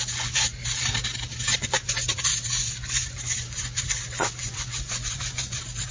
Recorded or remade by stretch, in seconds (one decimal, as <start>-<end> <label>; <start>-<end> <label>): 0.0-0.5 remade; 0.5-1.6 recorded; 1.6-5.9 remade